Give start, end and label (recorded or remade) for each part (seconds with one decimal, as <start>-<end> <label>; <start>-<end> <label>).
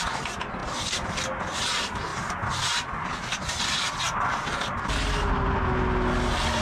0.0-6.6 recorded